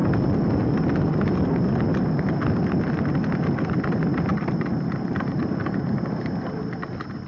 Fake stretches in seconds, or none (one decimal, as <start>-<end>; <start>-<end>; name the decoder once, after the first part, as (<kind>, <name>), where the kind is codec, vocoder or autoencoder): 4.3-5.4 (vocoder, BigVGAN v2)